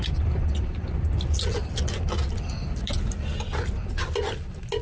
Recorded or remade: recorded